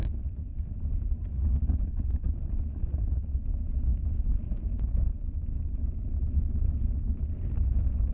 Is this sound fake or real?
real